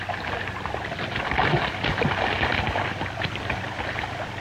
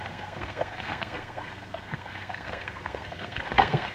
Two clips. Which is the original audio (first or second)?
first